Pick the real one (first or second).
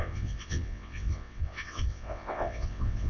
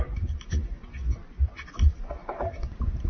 second